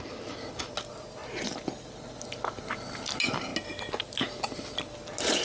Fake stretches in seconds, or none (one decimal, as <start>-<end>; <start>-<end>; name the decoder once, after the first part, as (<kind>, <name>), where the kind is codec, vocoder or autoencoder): none